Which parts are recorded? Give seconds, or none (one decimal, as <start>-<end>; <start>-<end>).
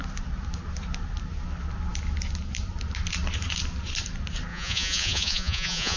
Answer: 0.0-4.5